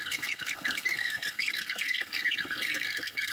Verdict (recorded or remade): remade